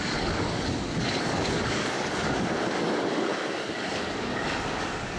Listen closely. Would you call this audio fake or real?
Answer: fake